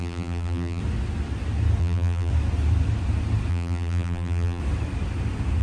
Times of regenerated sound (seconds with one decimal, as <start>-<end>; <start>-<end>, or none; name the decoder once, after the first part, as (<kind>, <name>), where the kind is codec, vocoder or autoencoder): 0.0-0.8 (vocoder, BigVGAN v2); 1.8-2.3; 3.5-4.6